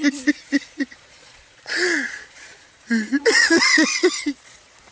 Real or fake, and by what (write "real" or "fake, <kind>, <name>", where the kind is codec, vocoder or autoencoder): fake, vocoder, Vocos